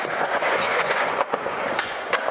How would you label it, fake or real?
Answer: fake